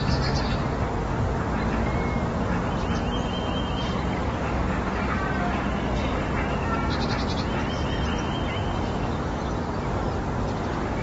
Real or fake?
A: real